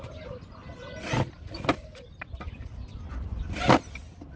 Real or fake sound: real